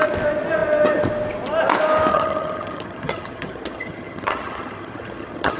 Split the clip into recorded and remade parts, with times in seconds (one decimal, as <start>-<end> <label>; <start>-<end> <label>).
0.0-2.1 recorded; 2.1-5.6 remade